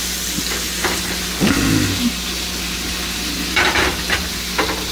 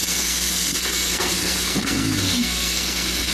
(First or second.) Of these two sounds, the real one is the first